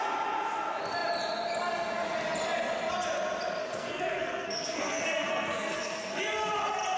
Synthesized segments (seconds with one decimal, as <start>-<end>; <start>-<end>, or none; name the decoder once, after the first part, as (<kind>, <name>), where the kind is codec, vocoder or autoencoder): 3.6-6.2 (codec, SNAC)